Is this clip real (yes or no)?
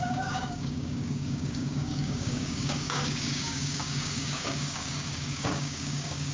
no